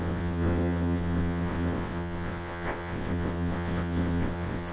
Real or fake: fake